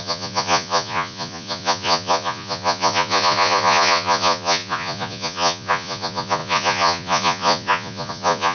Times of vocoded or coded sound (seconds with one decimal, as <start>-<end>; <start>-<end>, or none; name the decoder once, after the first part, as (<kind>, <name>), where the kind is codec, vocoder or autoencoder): 0.0-8.5 (vocoder, Vocos)